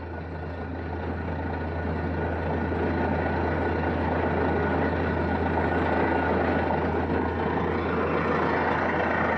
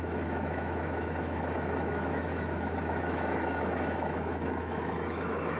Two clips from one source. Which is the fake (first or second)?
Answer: second